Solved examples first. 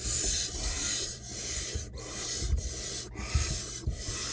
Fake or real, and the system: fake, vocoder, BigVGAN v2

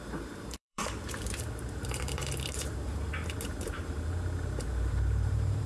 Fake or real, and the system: fake, vocoder, BigVGAN v2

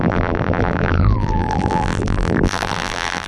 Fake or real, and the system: fake, vocoder, BigVGAN v2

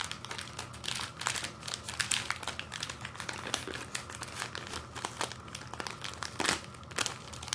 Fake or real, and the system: real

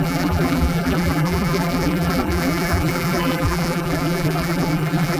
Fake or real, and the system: fake, vocoder, BigVGAN v2